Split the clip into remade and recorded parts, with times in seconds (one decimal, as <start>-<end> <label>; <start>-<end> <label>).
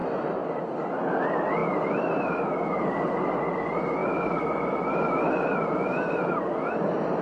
0.0-7.2 recorded